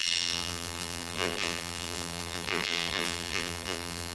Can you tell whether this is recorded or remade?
remade